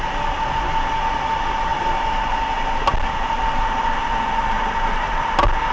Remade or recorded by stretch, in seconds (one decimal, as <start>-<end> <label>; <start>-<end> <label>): 0.0-5.7 recorded